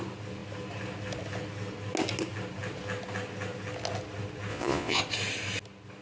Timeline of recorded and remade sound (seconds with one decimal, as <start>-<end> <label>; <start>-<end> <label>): 0.0-4.5 recorded; 4.5-5.0 remade; 5.0-6.0 recorded